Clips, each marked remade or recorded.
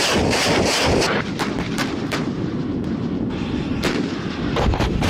remade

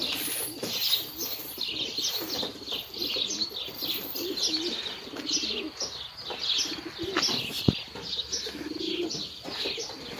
recorded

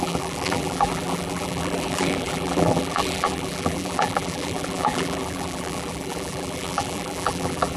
remade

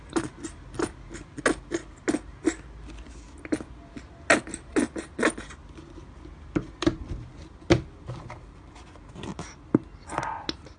recorded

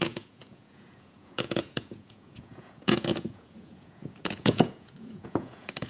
remade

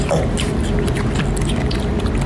recorded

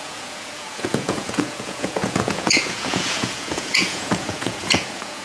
remade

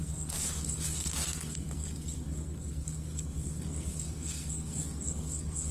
remade